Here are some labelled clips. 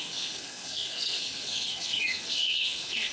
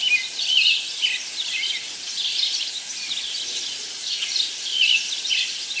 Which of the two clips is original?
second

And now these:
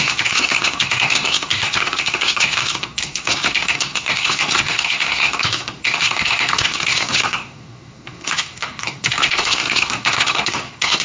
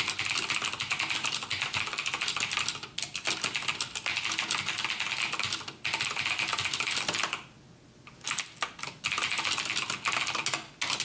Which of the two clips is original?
second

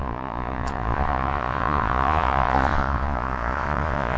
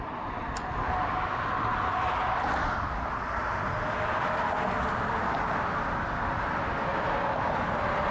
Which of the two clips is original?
second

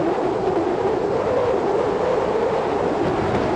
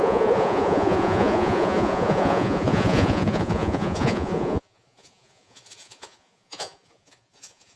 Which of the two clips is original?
first